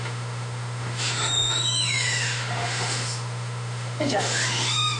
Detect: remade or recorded remade